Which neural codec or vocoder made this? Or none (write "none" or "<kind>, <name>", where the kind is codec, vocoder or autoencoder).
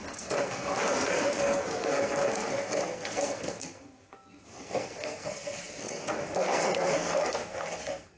codec, SNAC